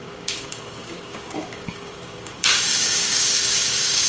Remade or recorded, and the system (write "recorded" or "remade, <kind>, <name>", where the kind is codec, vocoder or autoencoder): remade, codec, DAC